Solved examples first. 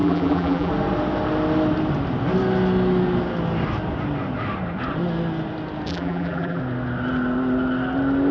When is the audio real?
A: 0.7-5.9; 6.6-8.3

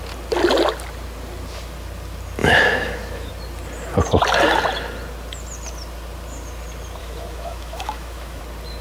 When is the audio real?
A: 0.0-2.4; 3.3-7.0; 8.4-8.8

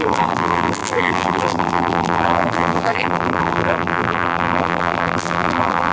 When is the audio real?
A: none

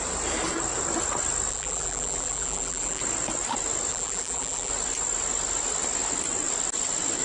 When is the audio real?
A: 0.0-1.5; 3.0-3.9; 4.7-7.2